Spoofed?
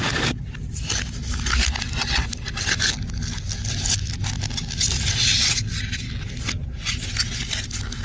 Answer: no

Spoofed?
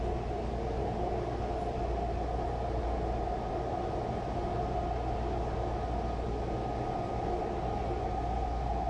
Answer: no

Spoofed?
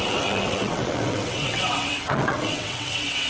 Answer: yes